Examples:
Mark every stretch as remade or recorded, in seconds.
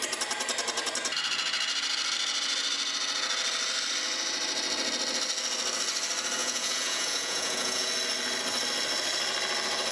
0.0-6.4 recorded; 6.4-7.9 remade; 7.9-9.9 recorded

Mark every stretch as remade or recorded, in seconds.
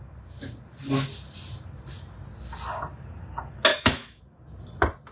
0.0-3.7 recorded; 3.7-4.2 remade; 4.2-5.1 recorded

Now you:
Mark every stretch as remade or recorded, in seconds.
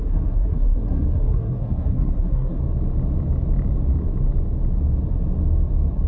0.0-2.6 remade; 2.6-6.1 recorded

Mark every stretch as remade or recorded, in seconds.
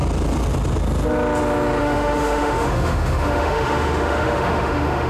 0.0-1.8 recorded; 1.8-5.1 remade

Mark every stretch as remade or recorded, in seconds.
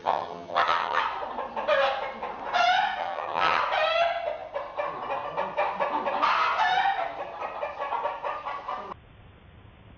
0.0-1.0 remade; 1.0-3.0 recorded; 3.0-3.6 remade; 3.6-10.0 recorded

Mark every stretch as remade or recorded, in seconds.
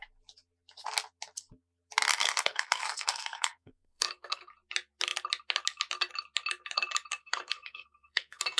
0.0-2.1 recorded; 2.1-4.5 remade; 4.5-7.2 recorded; 7.2-8.6 remade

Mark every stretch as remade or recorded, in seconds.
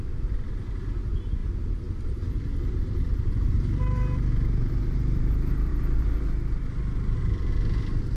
0.0-8.2 recorded